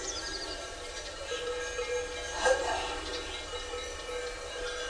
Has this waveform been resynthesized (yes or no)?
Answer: no